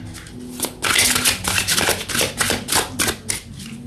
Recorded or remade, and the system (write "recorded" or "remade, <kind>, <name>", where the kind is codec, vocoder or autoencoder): recorded